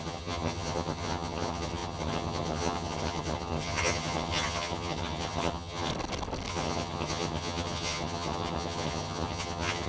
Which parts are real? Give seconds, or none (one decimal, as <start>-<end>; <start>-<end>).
5.9-6.5